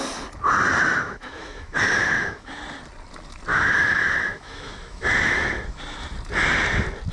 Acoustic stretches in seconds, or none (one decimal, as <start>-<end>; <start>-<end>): 0.0-0.9; 2.6-3.5; 5.8-7.1